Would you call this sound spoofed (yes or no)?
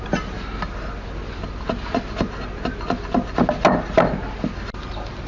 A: no